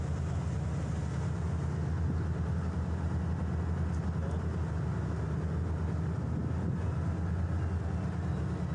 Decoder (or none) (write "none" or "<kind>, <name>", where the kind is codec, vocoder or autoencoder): none